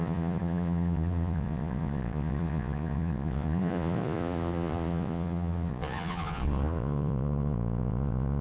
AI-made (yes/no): yes